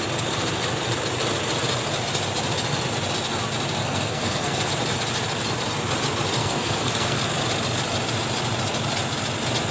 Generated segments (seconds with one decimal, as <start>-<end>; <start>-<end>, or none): 3.8-4.7; 6.4-7.2